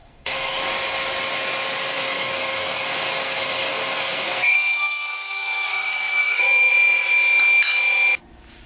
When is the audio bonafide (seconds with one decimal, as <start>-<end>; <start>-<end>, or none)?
0.6-1.9; 6.7-8.7